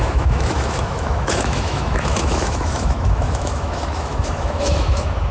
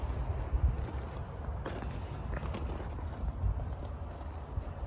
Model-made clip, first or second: first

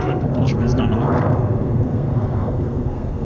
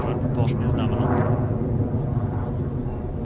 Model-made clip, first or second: first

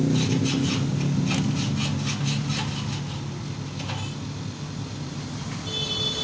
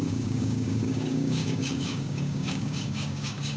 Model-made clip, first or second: second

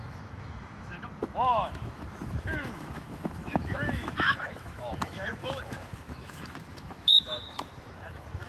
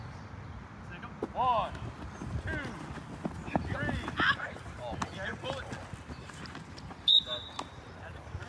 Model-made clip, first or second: first